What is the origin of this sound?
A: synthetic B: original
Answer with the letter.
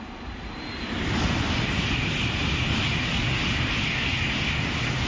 B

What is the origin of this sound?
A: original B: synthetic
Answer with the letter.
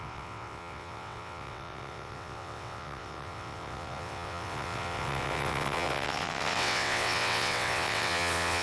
B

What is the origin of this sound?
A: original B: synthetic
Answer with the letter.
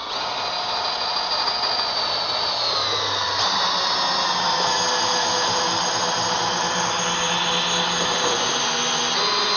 A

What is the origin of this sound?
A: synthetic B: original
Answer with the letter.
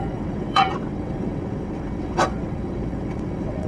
A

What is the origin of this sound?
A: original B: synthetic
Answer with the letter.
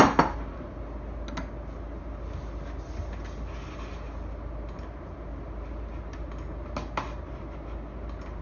A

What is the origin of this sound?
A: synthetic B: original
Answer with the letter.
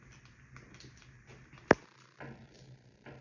B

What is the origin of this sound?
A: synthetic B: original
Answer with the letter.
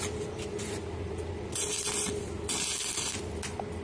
B